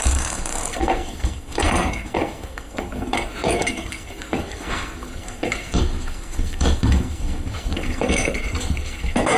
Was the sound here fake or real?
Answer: fake